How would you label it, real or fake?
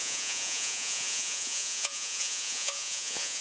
fake